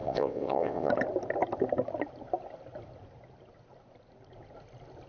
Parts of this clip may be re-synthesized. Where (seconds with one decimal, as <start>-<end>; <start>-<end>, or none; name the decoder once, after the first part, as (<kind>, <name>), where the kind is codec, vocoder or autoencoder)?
0.0-0.9 (vocoder, WaveNeXt)